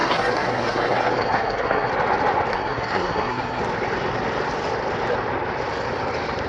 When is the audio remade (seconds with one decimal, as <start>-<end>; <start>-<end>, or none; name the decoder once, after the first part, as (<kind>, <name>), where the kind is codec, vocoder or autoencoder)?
0.0-1.9 (codec, SNAC); 2.5-3.6